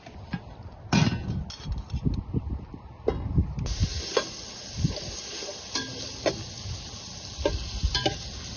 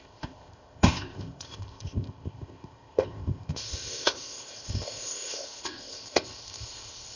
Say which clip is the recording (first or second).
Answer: first